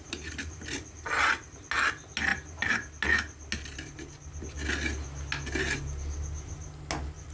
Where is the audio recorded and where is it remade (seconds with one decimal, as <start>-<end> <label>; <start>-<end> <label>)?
0.0-7.3 recorded